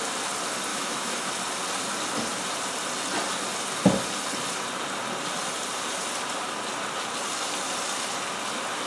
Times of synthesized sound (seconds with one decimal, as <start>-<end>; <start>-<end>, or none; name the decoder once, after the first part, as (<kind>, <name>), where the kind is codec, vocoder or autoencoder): 0.7-1.3 (autoencoder, DAC-VAE)